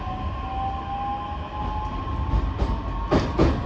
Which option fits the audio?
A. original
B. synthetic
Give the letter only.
A